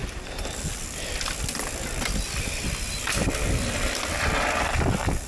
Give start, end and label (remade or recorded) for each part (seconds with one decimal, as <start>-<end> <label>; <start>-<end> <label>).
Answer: 0.0-5.3 recorded

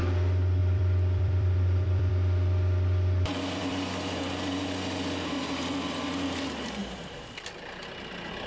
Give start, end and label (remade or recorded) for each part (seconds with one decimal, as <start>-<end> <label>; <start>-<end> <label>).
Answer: 0.0-0.6 recorded; 0.6-2.1 remade; 2.1-3.3 recorded; 3.3-4.3 remade; 4.3-6.8 recorded; 6.8-7.5 remade; 7.5-8.5 recorded

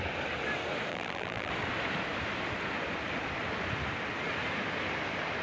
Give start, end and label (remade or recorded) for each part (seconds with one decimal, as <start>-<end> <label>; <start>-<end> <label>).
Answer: 0.0-0.9 recorded; 0.9-1.5 remade; 1.5-5.4 recorded

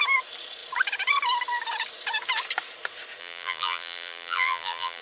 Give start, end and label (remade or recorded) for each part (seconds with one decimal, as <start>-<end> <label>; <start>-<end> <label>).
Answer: 0.0-3.2 recorded; 3.2-5.0 remade

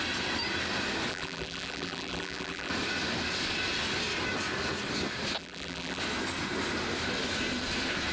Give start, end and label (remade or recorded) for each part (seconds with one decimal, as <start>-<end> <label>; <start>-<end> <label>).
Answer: 0.0-1.1 recorded; 1.1-2.7 remade; 2.7-5.4 recorded; 5.4-6.0 remade; 6.0-8.1 recorded

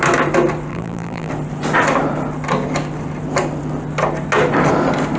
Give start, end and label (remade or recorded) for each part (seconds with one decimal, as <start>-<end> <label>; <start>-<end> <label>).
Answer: 0.0-0.7 recorded; 0.7-1.3 remade; 1.3-5.2 recorded

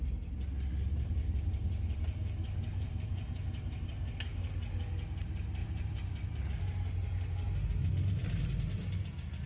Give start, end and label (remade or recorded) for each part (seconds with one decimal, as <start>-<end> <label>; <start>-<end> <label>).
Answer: 0.0-0.9 recorded; 0.9-3.8 remade; 3.8-5.6 recorded; 5.6-6.4 remade; 6.4-8.2 recorded; 8.2-9.1 remade; 9.1-9.5 recorded